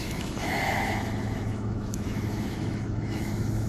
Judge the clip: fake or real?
fake